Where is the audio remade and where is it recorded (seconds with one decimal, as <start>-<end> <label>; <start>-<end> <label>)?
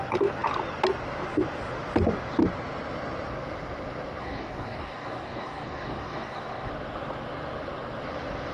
0.0-4.2 recorded; 4.2-6.7 remade; 6.7-8.5 recorded